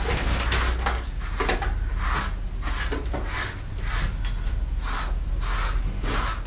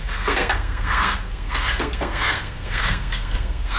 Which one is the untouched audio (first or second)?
first